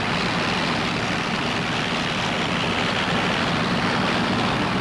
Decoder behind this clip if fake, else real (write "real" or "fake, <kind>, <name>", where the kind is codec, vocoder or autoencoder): real